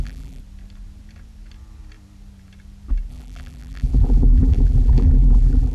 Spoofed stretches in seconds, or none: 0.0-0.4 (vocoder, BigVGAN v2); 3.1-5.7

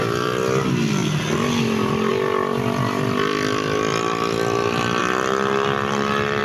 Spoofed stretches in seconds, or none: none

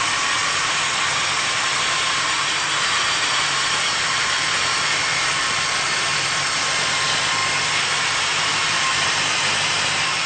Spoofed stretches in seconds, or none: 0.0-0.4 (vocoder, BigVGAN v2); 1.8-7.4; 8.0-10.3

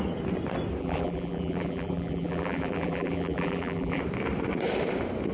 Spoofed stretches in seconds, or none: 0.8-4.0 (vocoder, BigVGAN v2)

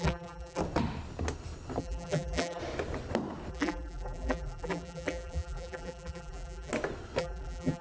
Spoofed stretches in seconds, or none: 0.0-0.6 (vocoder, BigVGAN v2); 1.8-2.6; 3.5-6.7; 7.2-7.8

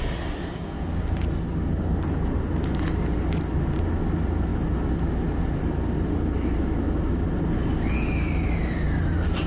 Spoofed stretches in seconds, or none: none

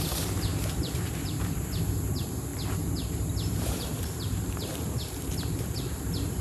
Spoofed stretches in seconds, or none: 0.0-6.4 (vocoder, BigVGAN v2)

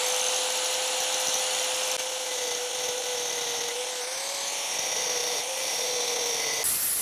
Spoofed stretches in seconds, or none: 5.2-5.9 (vocoder, BigVGAN v2)